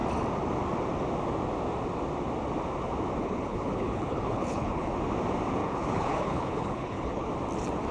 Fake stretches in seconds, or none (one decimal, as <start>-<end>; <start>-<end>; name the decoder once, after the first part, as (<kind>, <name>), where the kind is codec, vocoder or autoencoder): 3.2-4.9 (codec, HILCodec); 5.6-7.3